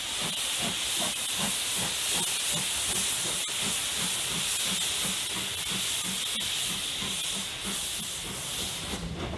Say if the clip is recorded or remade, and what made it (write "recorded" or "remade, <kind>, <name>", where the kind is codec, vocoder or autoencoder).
recorded